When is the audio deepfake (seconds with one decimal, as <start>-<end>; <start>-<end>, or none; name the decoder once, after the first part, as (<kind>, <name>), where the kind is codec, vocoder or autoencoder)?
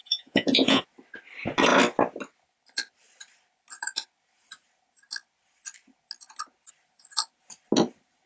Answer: 0.0-0.8 (vocoder, Vocos)